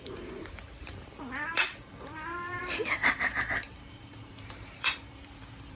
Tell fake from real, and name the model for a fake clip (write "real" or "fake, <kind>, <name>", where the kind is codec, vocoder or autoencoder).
fake, vocoder, BigVGAN v2